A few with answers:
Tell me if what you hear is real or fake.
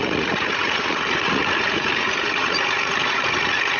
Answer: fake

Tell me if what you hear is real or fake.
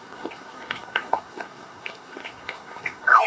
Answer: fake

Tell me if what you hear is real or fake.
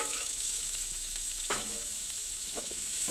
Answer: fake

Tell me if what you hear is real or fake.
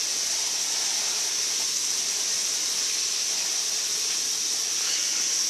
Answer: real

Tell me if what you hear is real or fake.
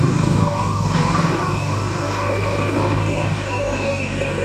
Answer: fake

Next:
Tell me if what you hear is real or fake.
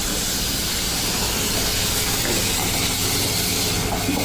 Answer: real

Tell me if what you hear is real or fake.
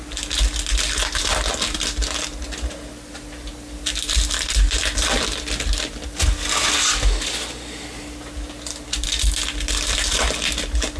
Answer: real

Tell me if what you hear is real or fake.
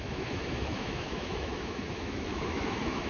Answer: fake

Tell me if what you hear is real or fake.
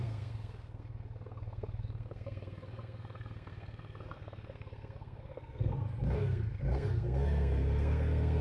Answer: fake